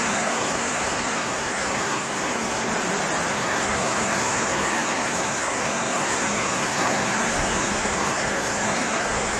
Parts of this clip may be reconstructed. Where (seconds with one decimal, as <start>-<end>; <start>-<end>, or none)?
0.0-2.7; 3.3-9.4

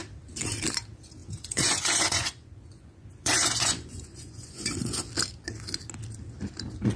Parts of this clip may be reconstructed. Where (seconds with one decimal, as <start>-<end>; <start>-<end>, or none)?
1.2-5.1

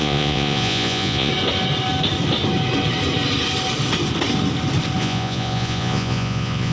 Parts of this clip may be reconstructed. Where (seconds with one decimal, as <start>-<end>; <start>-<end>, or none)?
0.0-1.3; 5.0-6.7